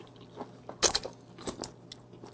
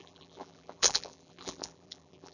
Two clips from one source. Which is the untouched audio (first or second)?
first